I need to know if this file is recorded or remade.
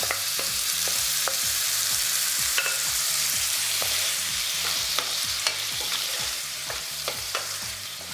remade